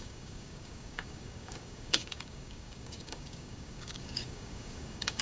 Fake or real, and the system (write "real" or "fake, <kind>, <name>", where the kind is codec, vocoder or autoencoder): fake, codec, DAC